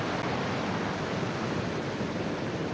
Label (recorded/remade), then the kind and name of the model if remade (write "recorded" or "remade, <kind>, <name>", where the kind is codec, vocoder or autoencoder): recorded